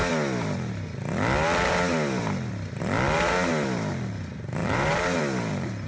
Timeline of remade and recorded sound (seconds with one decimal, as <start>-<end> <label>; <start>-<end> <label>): 0.0-4.6 recorded; 4.6-5.2 remade; 5.2-5.9 recorded